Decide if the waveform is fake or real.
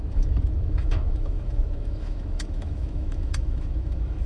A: fake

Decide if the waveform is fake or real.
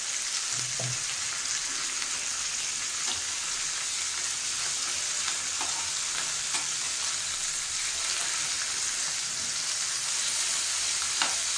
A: real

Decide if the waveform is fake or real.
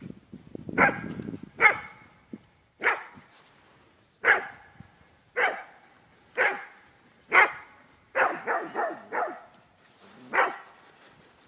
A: fake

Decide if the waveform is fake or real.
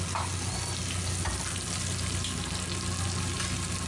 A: real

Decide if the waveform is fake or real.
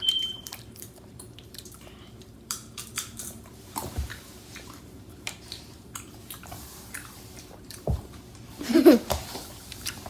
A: fake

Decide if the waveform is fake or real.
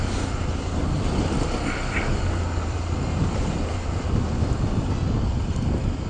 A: real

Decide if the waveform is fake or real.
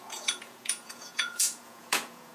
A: fake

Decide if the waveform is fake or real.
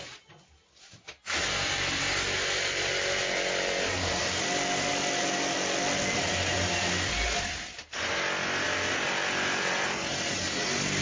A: real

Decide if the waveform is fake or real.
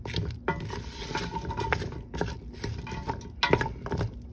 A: real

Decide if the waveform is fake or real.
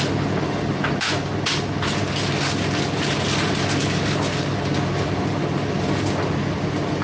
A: real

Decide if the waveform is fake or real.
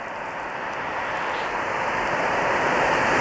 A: real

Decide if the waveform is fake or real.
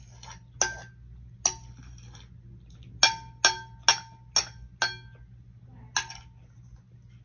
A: real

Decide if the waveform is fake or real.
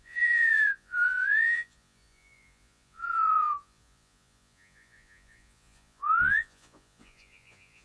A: fake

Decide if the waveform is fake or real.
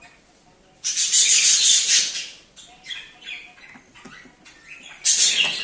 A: real